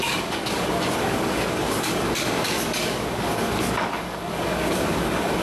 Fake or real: fake